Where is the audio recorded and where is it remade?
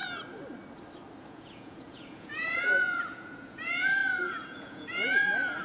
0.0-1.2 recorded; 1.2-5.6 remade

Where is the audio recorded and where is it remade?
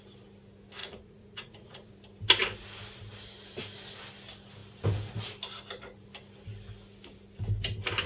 0.0-0.8 recorded; 0.8-1.9 remade; 1.9-8.1 recorded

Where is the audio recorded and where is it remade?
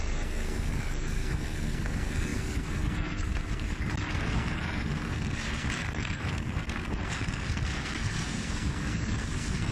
0.0-9.7 remade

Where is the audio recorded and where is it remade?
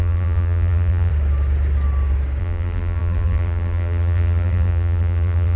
0.0-1.1 remade; 1.1-2.4 recorded; 2.4-5.6 remade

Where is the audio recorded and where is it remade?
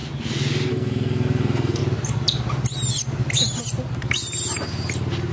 0.0-0.7 recorded; 0.7-1.8 remade; 1.8-5.3 recorded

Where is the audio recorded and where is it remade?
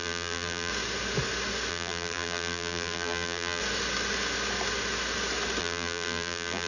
0.0-0.7 remade; 0.7-1.7 recorded; 1.7-3.6 remade; 3.6-5.6 recorded; 5.6-6.7 remade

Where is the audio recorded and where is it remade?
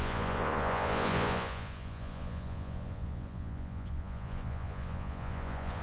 0.0-5.8 remade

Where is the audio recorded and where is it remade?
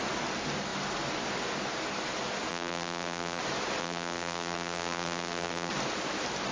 0.0-2.5 recorded; 2.5-3.4 remade; 3.4-3.8 recorded; 3.8-5.7 remade; 5.7-6.5 recorded